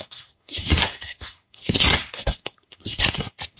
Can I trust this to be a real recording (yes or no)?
no